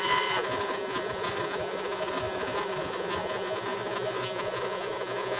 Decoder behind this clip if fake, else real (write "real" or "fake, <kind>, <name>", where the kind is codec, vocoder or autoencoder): fake, vocoder, Vocos